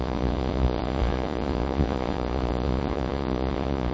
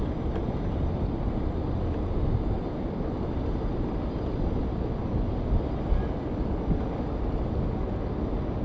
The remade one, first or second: first